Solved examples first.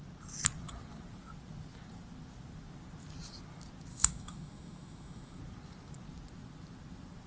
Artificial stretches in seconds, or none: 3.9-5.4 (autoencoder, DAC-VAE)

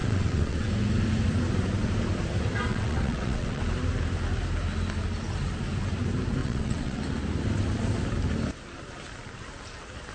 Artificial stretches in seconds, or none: 0.0-0.7 (vocoder, WaveNeXt); 2.7-3.6; 6.4-7.0

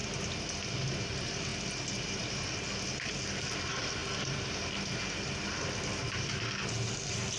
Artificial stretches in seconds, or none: 1.5-2.8 (vocoder, BigVGAN v2)